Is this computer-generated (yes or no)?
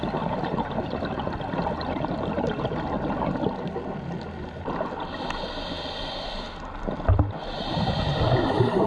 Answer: no